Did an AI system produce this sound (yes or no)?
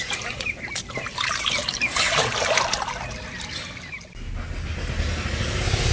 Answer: no